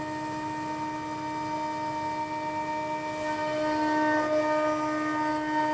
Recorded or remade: recorded